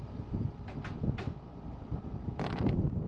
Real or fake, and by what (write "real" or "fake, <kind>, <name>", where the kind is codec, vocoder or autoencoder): real